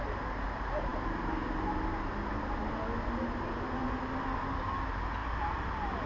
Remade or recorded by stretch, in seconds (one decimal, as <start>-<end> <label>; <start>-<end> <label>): 0.0-6.1 recorded